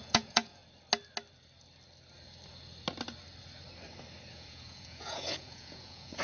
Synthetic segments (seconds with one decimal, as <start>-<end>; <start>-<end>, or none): 0.0-0.6; 4.3-6.2